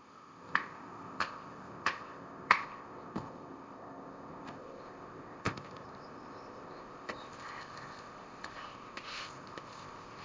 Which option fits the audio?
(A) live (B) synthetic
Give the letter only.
B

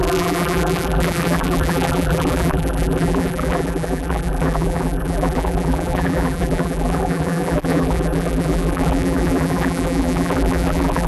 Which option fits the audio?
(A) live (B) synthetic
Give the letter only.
B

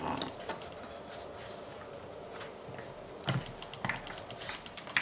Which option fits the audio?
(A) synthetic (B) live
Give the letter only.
B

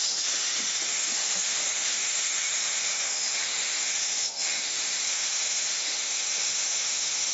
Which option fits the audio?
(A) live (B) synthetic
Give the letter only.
B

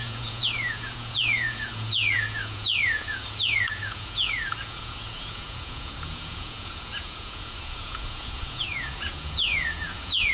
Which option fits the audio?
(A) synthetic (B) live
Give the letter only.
A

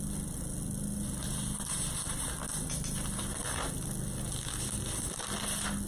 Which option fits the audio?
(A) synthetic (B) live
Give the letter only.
B